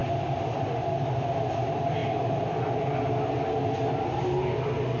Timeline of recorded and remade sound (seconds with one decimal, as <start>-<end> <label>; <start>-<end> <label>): 0.0-0.7 remade; 0.7-2.0 recorded; 2.0-3.2 remade; 3.2-5.0 recorded